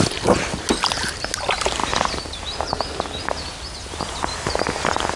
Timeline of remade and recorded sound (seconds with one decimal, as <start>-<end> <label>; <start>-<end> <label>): 0.0-5.2 recorded